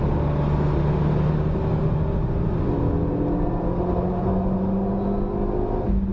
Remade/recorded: recorded